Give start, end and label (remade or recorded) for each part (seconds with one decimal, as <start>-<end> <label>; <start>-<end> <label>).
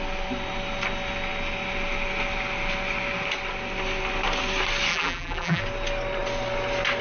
0.0-4.9 recorded; 4.9-5.6 remade; 5.6-7.0 recorded